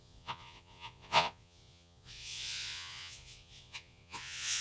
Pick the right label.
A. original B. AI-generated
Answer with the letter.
B